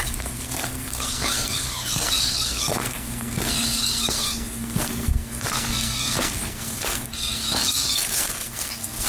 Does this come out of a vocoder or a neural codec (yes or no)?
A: yes